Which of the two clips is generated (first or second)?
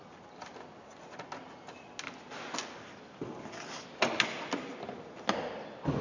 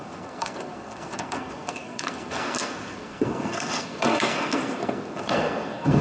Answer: second